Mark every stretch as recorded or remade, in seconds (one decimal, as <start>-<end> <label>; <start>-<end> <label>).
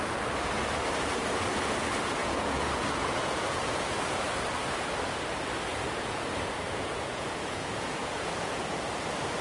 0.0-1.1 recorded; 1.1-1.6 remade; 1.6-2.2 recorded; 2.2-4.2 remade; 4.2-5.7 recorded; 5.7-8.6 remade; 8.6-9.4 recorded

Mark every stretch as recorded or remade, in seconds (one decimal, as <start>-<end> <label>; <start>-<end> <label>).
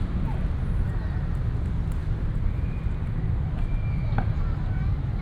0.0-5.2 recorded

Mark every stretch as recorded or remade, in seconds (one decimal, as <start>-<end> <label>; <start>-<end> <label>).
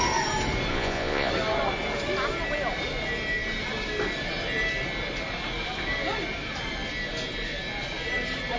0.0-0.7 recorded; 0.7-1.3 remade; 1.3-8.6 recorded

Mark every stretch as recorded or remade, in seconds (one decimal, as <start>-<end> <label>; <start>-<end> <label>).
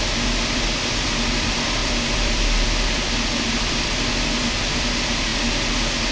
0.0-5.3 remade; 5.3-6.1 recorded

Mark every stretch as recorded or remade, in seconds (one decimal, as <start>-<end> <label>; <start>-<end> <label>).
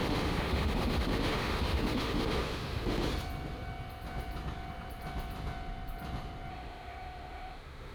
0.0-3.1 remade; 3.1-6.5 recorded; 6.5-7.9 remade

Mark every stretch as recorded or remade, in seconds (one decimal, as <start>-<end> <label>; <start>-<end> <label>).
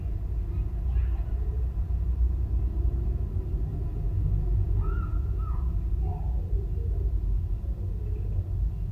0.0-3.7 recorded; 3.7-5.8 remade; 5.8-8.9 recorded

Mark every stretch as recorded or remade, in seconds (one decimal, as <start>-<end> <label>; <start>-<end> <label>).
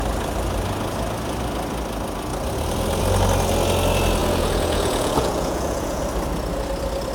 0.0-4.2 recorded; 4.2-6.0 remade; 6.0-7.1 recorded